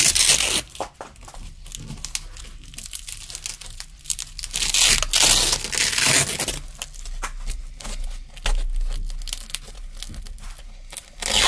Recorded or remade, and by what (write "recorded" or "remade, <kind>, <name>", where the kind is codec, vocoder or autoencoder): recorded